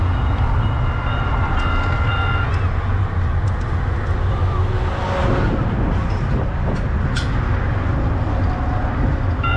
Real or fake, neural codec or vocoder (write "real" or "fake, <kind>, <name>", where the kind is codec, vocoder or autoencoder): real